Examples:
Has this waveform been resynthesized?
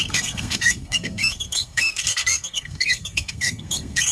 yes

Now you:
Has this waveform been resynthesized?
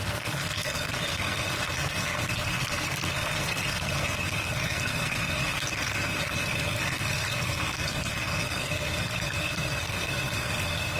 yes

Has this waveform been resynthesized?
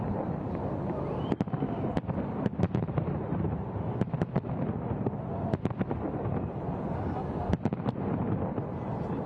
no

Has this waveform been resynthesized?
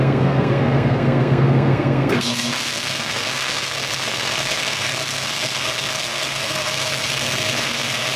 yes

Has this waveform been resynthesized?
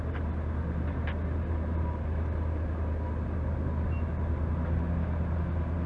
no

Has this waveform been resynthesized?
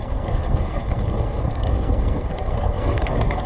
yes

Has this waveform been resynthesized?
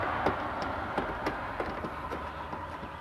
no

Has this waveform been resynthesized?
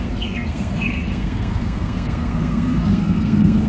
yes